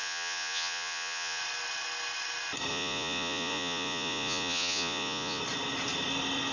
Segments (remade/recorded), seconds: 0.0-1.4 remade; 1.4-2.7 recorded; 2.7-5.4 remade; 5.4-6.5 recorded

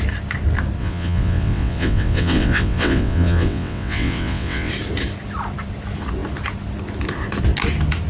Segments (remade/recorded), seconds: 0.0-0.8 recorded; 0.8-4.7 remade; 4.7-8.1 recorded

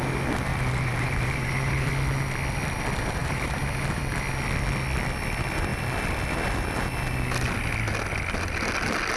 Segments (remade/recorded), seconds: 0.0-0.5 recorded; 0.5-1.9 remade; 1.9-3.2 recorded; 3.2-4.0 remade; 4.0-9.2 recorded

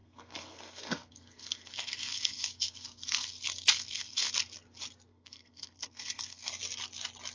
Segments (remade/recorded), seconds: 0.0-4.3 remade; 4.3-5.1 recorded; 5.1-6.5 remade; 6.5-7.3 recorded

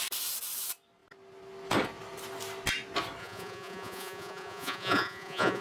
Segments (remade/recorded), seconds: 0.0-3.2 recorded; 3.2-5.6 remade